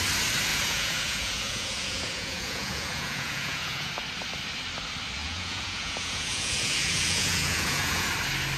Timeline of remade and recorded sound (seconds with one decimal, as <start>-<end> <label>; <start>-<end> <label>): 0.0-0.5 recorded; 0.5-3.9 remade; 3.9-5.2 recorded; 5.2-8.1 remade; 8.1-8.6 recorded